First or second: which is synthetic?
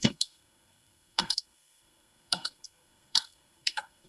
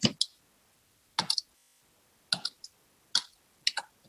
first